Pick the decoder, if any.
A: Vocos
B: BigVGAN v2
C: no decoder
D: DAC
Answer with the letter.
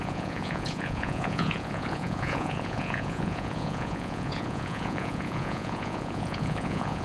A